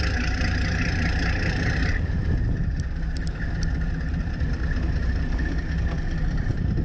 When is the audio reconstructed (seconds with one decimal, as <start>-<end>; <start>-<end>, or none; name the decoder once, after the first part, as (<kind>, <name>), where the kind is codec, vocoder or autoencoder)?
0.0-4.6 (vocoder, BigVGAN v2); 5.2-6.8